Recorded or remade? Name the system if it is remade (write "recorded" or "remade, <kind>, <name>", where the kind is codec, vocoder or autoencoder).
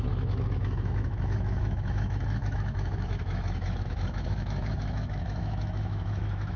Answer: remade, autoencoder, DAC-VAE